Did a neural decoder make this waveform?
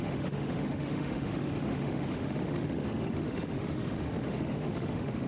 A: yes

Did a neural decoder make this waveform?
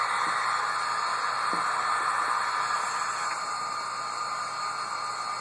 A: no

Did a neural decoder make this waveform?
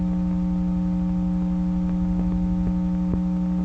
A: no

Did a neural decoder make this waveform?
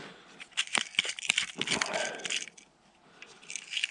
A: no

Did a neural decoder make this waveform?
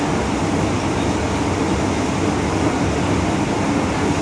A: no